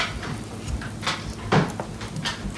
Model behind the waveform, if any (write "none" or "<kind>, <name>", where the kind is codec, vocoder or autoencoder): none